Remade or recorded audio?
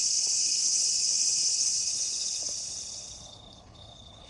remade